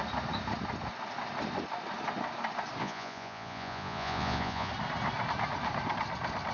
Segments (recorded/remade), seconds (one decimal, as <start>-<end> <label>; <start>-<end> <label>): 0.0-2.8 recorded; 2.8-4.7 remade; 4.7-6.5 recorded